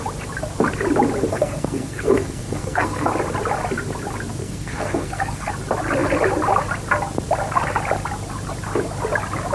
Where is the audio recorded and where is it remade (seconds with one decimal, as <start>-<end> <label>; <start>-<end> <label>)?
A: 0.0-1.3 recorded; 1.3-3.1 remade; 3.1-4.4 recorded; 4.4-5.5 remade; 5.5-9.5 recorded

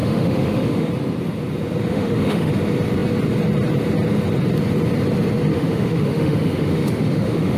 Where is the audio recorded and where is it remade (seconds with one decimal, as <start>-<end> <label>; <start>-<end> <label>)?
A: 0.0-0.9 remade; 0.9-1.9 recorded; 1.9-2.5 remade; 2.5-5.5 recorded; 5.5-7.6 remade

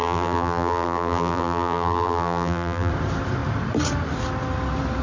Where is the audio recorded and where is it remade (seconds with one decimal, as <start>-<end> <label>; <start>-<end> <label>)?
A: 0.0-2.9 remade; 2.9-5.0 recorded

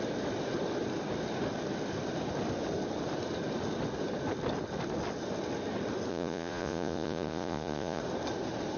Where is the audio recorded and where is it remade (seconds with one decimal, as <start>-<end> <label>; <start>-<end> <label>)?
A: 0.0-6.1 recorded; 6.1-8.0 remade; 8.0-8.8 recorded

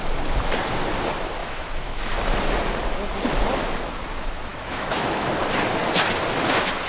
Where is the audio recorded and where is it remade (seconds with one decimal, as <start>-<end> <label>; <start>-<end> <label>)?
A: 0.0-1.4 recorded; 1.4-2.0 remade; 2.0-4.5 recorded; 4.5-5.3 remade; 5.3-6.9 recorded